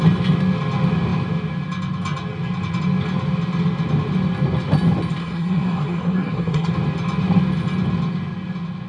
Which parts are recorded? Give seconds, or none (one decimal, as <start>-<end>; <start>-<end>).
0.0-5.2; 6.7-8.9